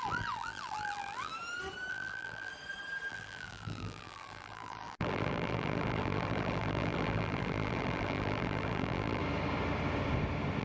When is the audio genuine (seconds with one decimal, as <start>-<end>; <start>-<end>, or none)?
1.3-1.9; 2.5-3.1; 9.2-10.6